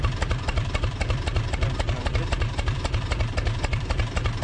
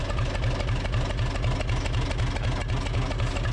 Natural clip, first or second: second